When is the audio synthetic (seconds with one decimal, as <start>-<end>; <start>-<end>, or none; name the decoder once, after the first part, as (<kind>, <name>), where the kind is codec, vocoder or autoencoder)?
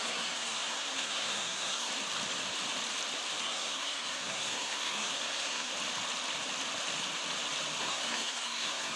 0.0-1.9 (codec, SNAC); 3.4-5.7; 7.8-9.0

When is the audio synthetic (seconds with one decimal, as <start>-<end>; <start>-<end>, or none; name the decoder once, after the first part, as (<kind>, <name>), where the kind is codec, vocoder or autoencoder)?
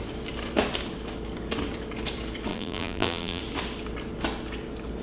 2.5-3.4 (vocoder, BigVGAN v2)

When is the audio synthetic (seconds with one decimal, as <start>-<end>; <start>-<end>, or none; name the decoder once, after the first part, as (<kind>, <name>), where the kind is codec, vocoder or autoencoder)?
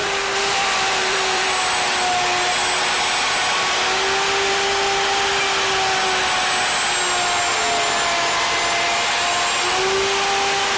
0.0-1.5 (vocoder, BigVGAN v2)